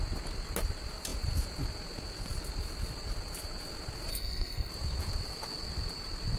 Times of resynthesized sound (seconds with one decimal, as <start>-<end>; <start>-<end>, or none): 4.1-4.7